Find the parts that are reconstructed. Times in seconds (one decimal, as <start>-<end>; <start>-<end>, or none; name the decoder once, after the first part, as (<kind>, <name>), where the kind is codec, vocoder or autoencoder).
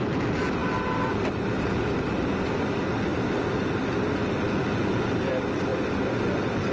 none